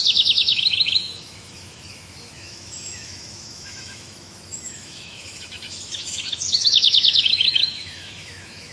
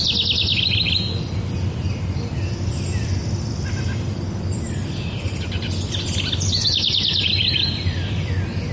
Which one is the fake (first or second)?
first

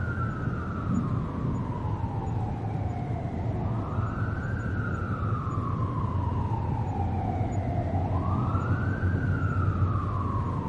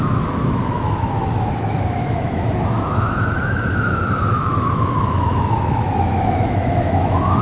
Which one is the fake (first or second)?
second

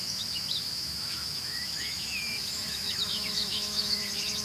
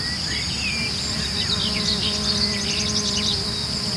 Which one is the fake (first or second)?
first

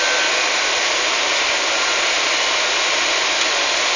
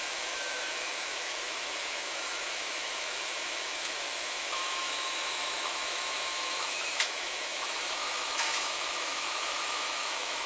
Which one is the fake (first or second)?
second